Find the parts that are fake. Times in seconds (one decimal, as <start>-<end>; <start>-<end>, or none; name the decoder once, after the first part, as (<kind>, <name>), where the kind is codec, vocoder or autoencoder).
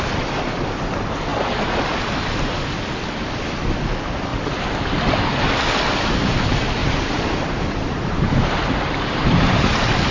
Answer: 6.8-10.1 (vocoder, BigVGAN v2)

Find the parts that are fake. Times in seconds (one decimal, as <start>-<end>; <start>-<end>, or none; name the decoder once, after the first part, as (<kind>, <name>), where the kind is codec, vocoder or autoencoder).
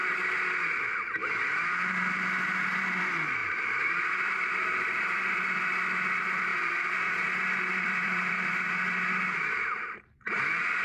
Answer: 1.2-3.0 (vocoder, BigVGAN v2); 3.4-5.4; 6.5-10.4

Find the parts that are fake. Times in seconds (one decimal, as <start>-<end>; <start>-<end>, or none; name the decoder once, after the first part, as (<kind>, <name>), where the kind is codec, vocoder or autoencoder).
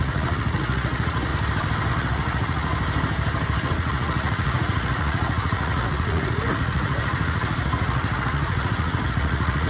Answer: 0.0-1.3 (vocoder, Vocos); 1.9-2.7; 3.6-9.7